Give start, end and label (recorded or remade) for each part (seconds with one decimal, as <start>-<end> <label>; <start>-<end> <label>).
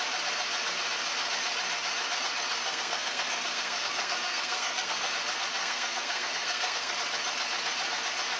0.0-2.6 recorded; 2.6-5.1 remade; 5.1-5.6 recorded; 5.6-6.9 remade; 6.9-8.4 recorded